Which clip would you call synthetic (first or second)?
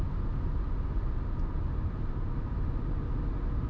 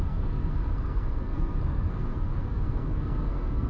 second